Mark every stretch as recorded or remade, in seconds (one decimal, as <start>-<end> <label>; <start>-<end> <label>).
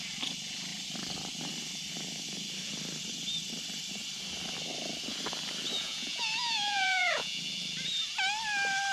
0.0-5.8 recorded; 5.8-7.4 remade; 7.4-8.9 recorded